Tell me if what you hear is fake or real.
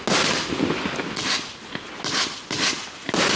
real